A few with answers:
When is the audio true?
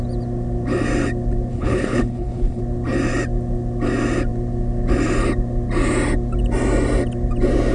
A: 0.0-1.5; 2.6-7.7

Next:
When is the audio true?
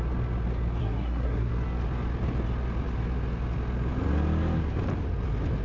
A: 0.0-0.8; 1.5-5.6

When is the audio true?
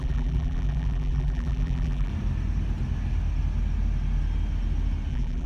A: 2.1-5.1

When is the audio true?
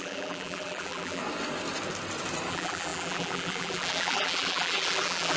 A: 1.2-2.5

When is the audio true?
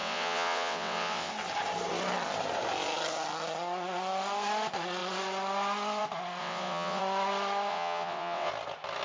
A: 1.3-6.4; 7.0-7.7; 8.5-9.0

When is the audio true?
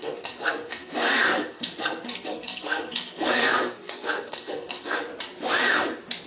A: 5.1-6.3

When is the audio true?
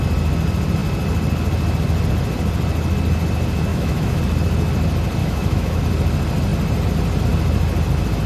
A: 0.0-3.7; 4.2-5.2; 5.8-8.3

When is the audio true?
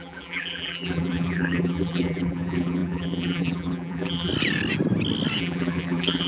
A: 4.3-5.4